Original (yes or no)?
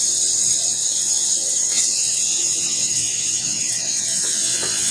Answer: no